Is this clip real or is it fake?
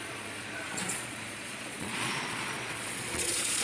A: fake